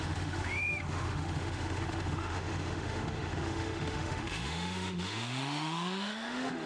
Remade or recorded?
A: remade